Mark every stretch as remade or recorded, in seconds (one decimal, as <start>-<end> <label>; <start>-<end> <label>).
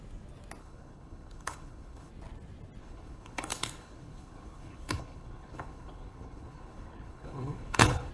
0.0-0.6 recorded; 0.6-2.1 remade; 2.1-2.8 recorded; 2.8-8.1 remade